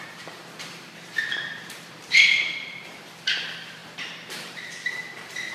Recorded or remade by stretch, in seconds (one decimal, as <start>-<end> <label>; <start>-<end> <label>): 0.0-5.5 remade